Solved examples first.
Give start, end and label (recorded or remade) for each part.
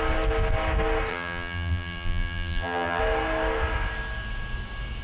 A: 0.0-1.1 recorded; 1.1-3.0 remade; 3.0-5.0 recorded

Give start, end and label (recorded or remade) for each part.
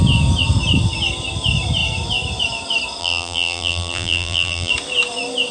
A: 0.0-3.0 recorded; 3.0-4.7 remade; 4.7-5.5 recorded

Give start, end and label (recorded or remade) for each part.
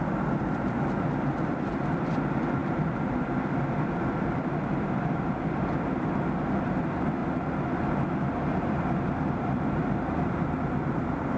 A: 0.0-7.2 remade; 7.2-8.9 recorded; 8.9-11.4 remade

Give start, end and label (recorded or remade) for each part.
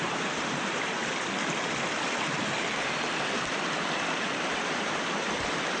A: 0.0-1.0 remade; 1.0-4.2 recorded; 4.2-5.8 remade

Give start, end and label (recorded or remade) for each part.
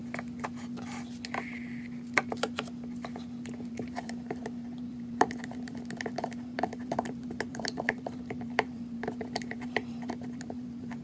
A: 0.0-3.7 recorded; 3.7-11.0 remade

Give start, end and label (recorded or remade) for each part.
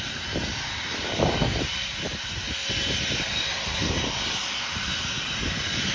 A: 0.0-5.9 recorded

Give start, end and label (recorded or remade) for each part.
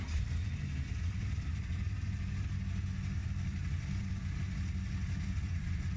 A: 0.0-2.2 remade; 2.2-3.2 recorded; 3.2-6.0 remade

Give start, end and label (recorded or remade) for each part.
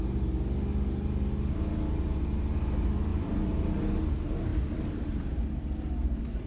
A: 0.0-3.1 recorded; 3.1-4.1 remade; 4.1-4.5 recorded; 4.5-6.5 remade